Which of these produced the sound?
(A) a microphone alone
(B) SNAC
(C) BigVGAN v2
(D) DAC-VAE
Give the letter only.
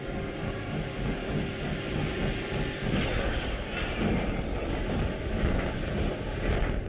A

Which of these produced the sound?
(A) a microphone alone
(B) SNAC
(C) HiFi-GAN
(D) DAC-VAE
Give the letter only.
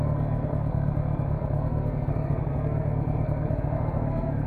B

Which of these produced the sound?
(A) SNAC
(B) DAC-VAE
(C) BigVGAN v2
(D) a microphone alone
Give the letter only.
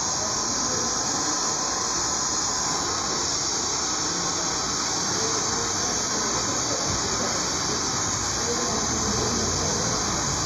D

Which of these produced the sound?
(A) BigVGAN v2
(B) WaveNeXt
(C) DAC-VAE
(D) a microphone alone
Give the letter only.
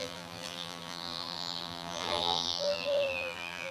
A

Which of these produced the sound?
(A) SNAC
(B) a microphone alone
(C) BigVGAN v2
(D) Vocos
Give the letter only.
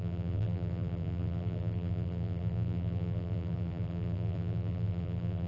C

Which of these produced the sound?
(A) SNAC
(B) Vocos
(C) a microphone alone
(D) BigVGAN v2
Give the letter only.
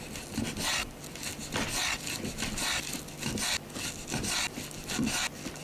C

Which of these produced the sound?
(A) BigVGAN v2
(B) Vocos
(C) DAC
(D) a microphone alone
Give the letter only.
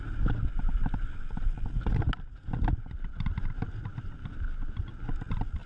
D